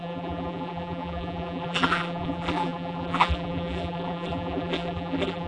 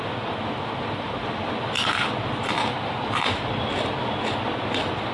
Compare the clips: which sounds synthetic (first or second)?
first